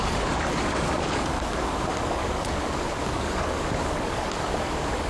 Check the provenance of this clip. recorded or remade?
remade